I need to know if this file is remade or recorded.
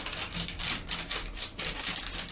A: recorded